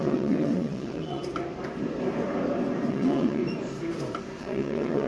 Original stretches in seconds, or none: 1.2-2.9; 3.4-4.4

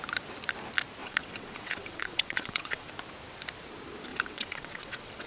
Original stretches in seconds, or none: 0.0-1.0; 2.9-4.1